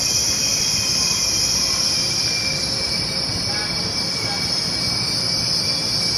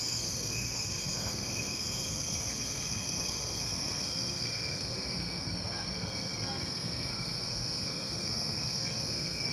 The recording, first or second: first